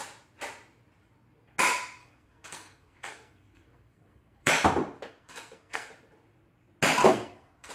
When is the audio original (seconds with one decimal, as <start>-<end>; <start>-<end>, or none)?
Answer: 0.0-2.0; 4.5-5.1; 5.9-7.0